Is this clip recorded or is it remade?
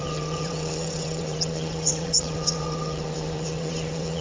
remade